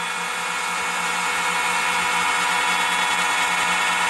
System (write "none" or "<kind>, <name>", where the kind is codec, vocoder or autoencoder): none